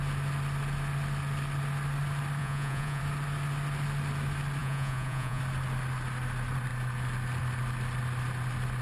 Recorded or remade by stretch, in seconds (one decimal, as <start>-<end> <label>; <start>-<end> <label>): 0.0-2.4 recorded; 2.4-3.0 remade; 3.0-4.6 recorded; 4.6-5.4 remade; 5.4-8.8 recorded